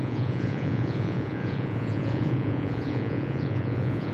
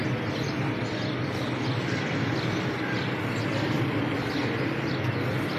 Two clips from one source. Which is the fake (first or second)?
first